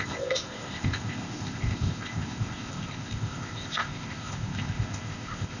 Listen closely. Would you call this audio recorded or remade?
remade